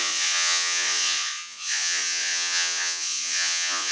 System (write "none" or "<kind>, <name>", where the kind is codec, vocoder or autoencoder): vocoder, Vocos